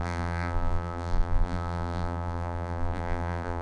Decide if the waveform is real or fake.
fake